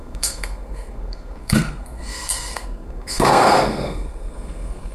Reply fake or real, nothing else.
fake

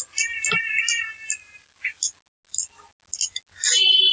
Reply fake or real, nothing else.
real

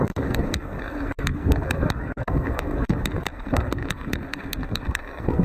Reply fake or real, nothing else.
fake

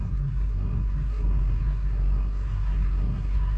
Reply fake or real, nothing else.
fake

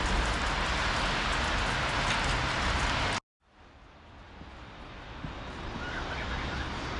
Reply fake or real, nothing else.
real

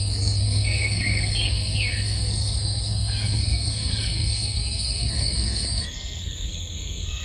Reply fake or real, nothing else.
fake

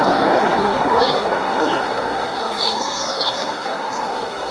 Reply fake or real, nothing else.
fake